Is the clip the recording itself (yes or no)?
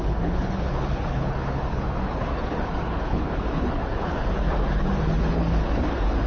no